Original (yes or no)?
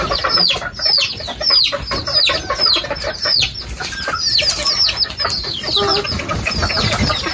yes